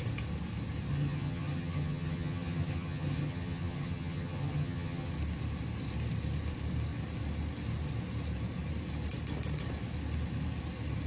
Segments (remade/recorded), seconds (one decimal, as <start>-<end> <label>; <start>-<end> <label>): 0.0-0.9 recorded; 0.9-5.1 remade; 5.1-11.1 recorded